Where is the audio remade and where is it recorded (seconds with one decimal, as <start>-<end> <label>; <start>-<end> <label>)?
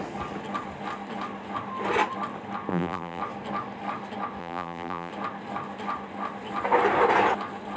0.0-2.7 recorded; 2.7-3.2 remade; 3.2-4.4 recorded; 4.4-5.1 remade; 5.1-7.8 recorded